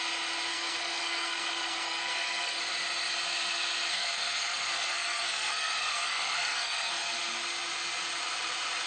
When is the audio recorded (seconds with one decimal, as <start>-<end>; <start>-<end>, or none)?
0.0-0.5; 2.6-3.9; 7.1-8.9